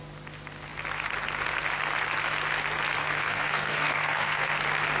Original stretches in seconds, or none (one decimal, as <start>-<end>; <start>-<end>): 0.0-3.0; 4.5-5.0